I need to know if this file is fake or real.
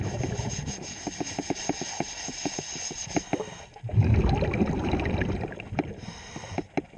real